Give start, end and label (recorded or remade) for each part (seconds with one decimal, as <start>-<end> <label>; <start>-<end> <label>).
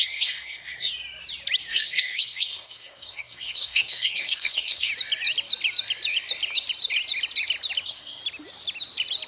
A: 0.0-0.9 remade; 0.9-1.7 recorded; 1.7-4.9 remade; 4.9-7.8 recorded; 7.8-8.2 remade; 8.2-9.3 recorded